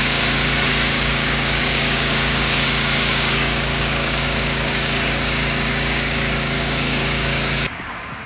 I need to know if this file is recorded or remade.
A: remade